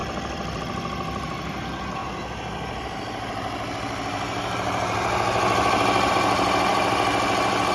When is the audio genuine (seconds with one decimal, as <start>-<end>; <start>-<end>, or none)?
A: 0.6-7.7